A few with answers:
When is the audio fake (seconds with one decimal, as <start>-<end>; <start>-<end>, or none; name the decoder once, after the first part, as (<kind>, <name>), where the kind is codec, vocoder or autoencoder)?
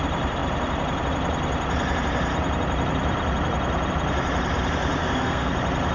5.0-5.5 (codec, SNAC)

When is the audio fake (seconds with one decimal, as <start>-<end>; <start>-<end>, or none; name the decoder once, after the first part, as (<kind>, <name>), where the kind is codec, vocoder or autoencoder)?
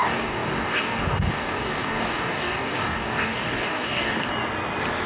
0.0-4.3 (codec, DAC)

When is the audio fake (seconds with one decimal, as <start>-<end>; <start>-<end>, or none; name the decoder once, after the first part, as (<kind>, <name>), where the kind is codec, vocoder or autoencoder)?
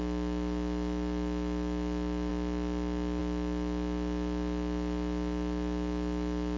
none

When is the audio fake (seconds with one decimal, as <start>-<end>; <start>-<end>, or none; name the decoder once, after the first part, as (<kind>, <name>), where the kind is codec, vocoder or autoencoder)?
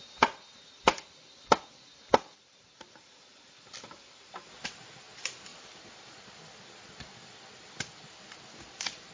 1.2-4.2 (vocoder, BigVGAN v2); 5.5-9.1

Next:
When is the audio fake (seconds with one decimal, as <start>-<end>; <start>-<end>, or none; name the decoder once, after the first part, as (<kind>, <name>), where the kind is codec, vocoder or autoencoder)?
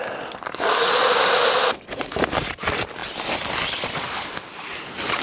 none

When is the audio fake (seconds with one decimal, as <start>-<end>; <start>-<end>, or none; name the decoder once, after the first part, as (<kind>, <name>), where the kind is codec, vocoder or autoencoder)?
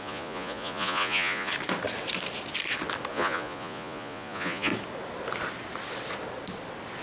0.0-1.5 (vocoder, Vocos); 3.1-4.7